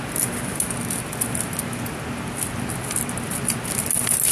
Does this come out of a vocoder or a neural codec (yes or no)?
no